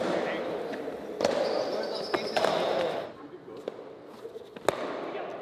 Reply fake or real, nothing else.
real